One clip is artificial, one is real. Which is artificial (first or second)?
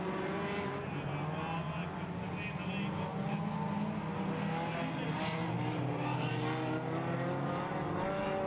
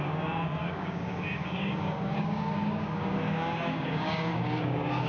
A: second